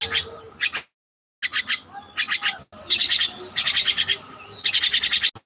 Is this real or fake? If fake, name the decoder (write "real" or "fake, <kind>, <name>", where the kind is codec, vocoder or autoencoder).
real